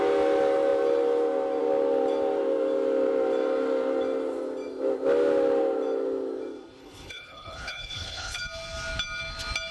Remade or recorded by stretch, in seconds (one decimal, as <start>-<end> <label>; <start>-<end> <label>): 0.0-6.8 recorded; 6.8-8.4 remade; 8.4-9.7 recorded